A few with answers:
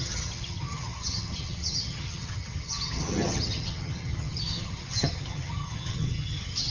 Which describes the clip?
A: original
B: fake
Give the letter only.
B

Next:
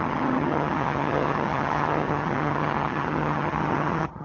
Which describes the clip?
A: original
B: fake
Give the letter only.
B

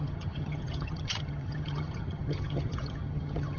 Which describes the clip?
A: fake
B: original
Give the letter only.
A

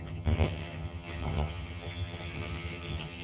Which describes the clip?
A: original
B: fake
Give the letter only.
B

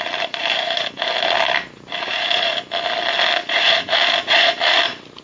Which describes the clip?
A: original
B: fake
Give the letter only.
A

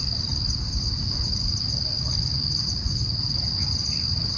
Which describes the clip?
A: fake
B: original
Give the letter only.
B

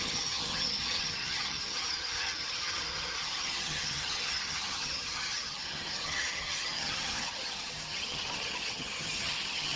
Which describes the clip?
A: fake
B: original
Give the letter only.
A